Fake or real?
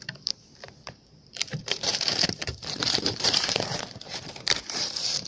fake